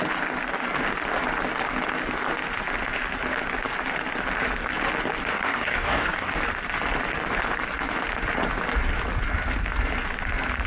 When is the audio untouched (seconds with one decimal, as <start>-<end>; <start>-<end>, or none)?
0.0-5.3; 6.4-10.7